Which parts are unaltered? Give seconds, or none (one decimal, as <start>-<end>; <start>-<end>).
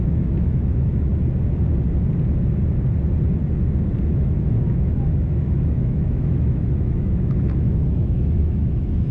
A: 1.1-4.1